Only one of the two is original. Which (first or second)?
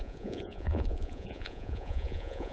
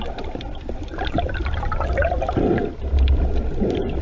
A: second